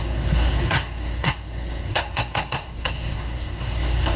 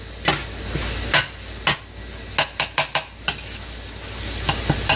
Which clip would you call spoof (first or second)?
first